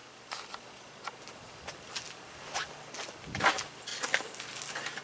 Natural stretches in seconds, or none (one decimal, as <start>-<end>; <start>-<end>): 0.0-5.0